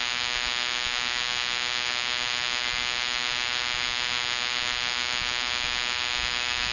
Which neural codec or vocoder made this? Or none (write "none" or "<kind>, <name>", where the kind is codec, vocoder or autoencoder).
none